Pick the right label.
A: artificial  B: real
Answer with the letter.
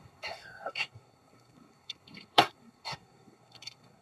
A